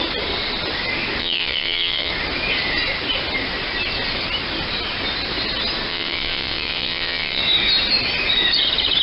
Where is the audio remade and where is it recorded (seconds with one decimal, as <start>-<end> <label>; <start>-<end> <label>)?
0.0-1.2 recorded; 1.2-2.1 remade; 2.1-5.9 recorded; 5.9-7.4 remade; 7.4-9.0 recorded